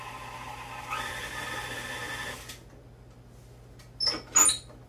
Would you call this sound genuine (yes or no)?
yes